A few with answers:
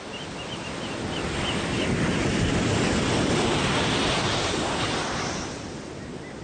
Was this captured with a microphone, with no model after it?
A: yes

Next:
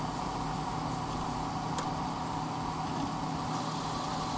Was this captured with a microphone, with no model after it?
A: yes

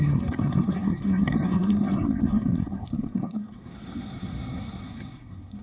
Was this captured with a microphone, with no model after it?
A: no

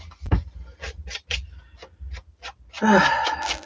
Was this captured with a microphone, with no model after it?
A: yes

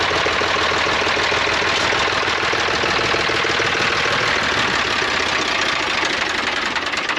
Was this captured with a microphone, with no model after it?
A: yes